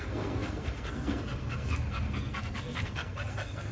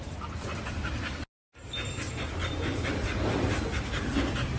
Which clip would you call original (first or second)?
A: second